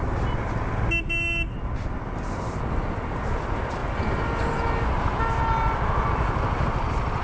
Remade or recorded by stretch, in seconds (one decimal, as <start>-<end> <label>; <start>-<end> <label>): 0.0-7.2 recorded

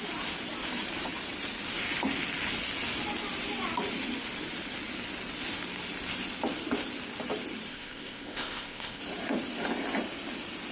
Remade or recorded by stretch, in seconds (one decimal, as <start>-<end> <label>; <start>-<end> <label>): 0.0-7.7 recorded; 7.7-9.0 remade; 9.0-10.7 recorded

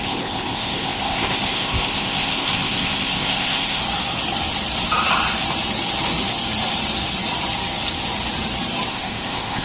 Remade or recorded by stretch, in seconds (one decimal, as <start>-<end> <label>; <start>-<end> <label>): 0.0-3.8 remade; 3.8-8.9 recorded; 8.9-9.6 remade

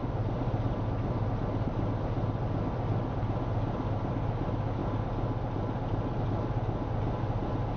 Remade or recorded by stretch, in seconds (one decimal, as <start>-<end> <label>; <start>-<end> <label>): 0.0-7.8 recorded

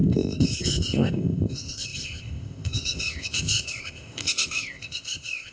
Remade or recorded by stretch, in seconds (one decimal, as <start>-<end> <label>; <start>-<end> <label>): 0.0-5.5 remade